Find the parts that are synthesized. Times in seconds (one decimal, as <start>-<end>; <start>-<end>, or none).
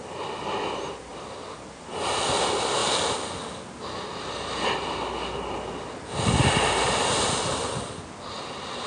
none